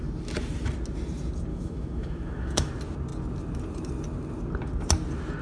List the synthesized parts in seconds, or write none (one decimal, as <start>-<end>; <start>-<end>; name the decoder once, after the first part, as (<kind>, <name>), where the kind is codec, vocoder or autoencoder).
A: 1.5-2.7 (autoencoder, DAC-VAE)